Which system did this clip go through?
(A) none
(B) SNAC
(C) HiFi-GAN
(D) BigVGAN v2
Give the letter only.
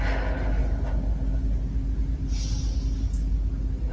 A